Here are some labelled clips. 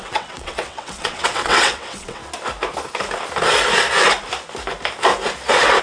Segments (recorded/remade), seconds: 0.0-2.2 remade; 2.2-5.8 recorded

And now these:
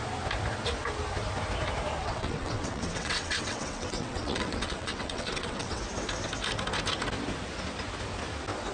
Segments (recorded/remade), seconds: 0.0-2.0 recorded; 2.0-5.8 remade; 5.8-8.7 recorded

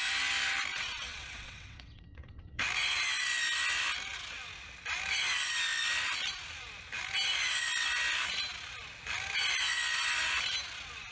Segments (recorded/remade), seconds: 0.0-0.7 recorded; 0.7-2.6 remade; 2.6-11.1 recorded

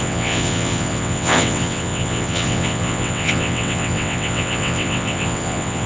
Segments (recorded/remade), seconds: 0.0-5.9 remade

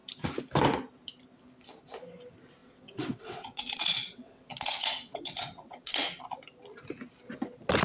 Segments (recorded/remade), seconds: 0.0-2.6 recorded; 2.6-6.2 remade; 6.2-7.8 recorded

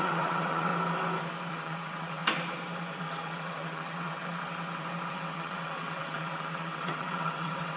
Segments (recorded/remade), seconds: 0.0-0.7 remade; 0.7-1.5 recorded; 1.5-2.2 remade; 2.2-3.0 recorded; 3.0-4.2 remade; 4.2-5.1 recorded; 5.1-7.8 remade

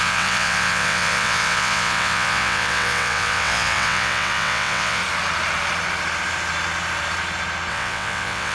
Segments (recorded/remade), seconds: 0.0-5.0 remade; 5.0-7.7 recorded; 7.7-8.5 remade